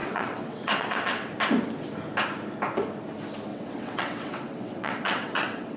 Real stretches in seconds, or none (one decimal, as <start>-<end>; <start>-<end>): 1.3-3.5